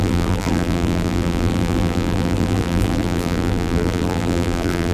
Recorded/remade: remade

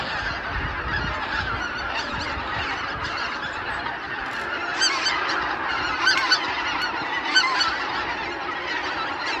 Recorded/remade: recorded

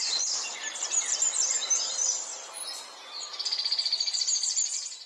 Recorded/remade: recorded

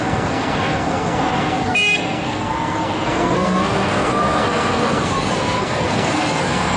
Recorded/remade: remade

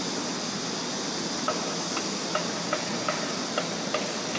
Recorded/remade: recorded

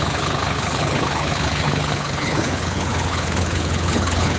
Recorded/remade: remade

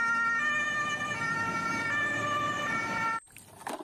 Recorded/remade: recorded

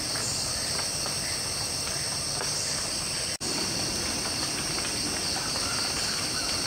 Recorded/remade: remade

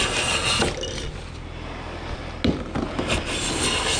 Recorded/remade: recorded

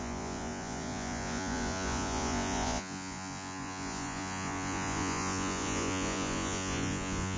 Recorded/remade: remade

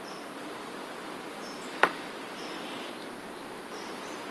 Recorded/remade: remade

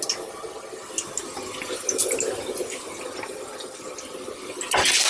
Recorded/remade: recorded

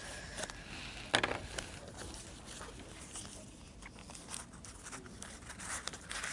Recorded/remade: recorded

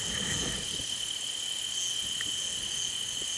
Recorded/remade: recorded